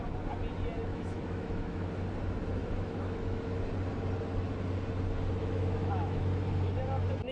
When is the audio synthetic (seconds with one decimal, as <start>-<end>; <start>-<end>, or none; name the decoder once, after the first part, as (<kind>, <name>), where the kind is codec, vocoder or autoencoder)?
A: 0.9-1.9 (autoencoder, DAC-VAE); 2.6-3.4; 5.4-6.2